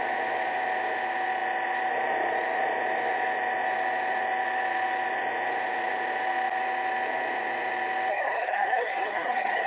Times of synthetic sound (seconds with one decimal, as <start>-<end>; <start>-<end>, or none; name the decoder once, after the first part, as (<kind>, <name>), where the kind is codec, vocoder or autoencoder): 8.1-9.7 (codec, SNAC)